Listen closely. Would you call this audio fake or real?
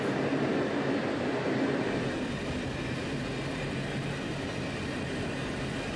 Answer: real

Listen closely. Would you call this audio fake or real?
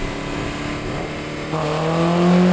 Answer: real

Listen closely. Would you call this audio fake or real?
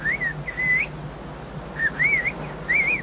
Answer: real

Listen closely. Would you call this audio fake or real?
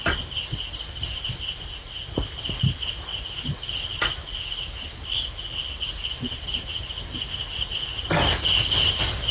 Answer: real